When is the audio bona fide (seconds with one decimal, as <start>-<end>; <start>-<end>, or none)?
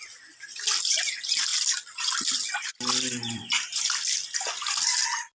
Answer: 0.0-1.5; 3.8-5.3